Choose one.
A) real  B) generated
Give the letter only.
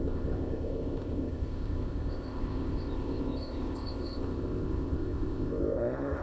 B